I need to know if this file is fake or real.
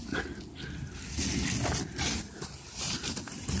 real